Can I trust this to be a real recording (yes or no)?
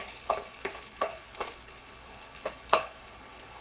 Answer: no